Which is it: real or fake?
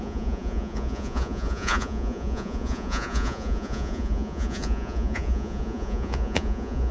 fake